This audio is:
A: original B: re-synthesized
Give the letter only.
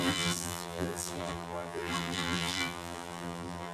B